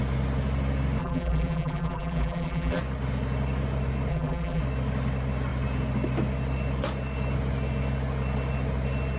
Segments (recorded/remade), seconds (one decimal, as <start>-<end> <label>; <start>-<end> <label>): 0.0-1.0 recorded; 1.0-2.8 remade; 2.8-4.1 recorded; 4.1-4.6 remade; 4.6-9.2 recorded

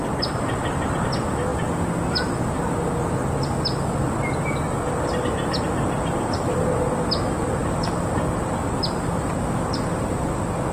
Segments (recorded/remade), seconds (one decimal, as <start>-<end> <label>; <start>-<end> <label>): 0.0-10.7 recorded